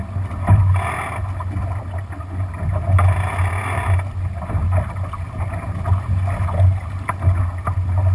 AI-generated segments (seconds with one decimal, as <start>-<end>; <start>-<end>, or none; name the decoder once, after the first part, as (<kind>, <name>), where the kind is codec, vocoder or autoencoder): none